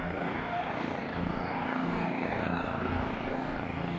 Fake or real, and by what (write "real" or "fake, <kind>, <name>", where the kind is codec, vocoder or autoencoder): fake, codec, DAC